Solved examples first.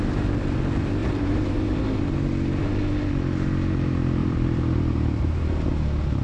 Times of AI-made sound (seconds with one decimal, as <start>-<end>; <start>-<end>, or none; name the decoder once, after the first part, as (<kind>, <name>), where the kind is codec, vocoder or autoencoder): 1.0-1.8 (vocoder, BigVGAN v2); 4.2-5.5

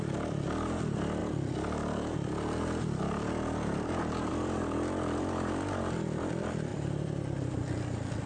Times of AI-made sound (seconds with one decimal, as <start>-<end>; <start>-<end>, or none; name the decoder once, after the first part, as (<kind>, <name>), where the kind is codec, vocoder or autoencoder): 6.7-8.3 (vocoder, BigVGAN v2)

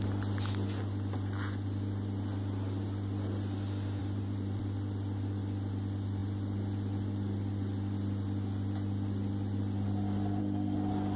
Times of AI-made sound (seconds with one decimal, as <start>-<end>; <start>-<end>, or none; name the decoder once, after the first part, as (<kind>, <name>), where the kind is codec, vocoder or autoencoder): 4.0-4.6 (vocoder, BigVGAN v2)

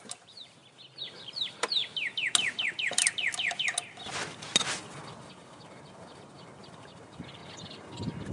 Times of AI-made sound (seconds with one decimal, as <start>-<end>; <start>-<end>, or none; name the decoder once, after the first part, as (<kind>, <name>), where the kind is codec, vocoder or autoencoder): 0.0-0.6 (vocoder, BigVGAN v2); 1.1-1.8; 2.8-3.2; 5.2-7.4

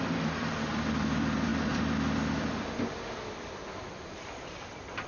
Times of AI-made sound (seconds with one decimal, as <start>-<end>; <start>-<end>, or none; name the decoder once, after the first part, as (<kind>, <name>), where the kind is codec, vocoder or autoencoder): 0.0-5.1 (vocoder, BigVGAN v2)

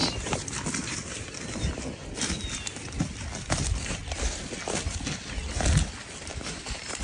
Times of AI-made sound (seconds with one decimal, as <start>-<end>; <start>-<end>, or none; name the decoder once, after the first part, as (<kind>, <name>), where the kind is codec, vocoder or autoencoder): 6.3-7.0 (vocoder, BigVGAN v2)